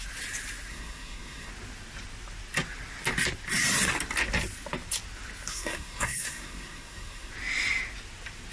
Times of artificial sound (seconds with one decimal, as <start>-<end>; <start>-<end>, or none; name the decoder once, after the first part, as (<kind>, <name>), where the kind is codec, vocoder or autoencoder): 0.7-1.5 (codec, SNAC); 5.5-7.3